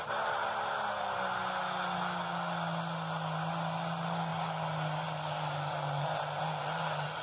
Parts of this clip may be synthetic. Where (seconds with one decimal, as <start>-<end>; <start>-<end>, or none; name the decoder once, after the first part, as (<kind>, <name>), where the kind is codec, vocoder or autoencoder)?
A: none